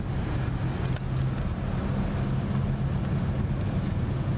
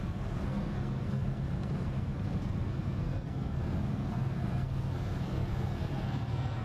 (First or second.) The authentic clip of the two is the first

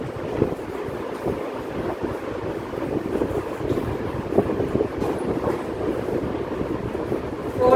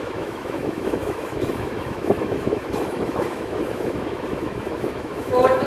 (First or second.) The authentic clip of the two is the first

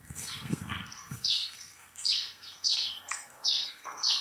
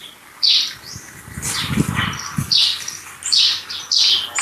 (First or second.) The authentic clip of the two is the second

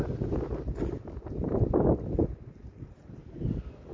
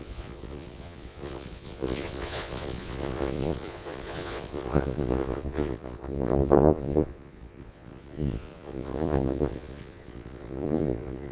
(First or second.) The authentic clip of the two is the first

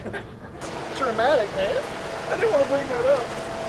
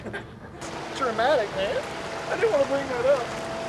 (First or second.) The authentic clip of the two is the second